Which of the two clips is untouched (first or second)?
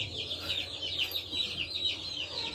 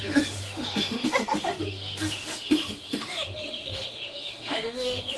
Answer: first